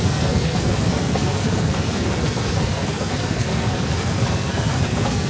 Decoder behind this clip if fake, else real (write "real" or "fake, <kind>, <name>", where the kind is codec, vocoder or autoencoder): fake, codec, SNAC